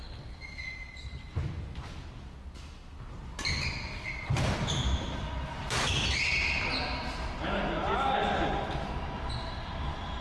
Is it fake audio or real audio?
real